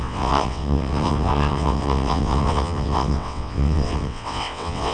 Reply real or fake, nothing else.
fake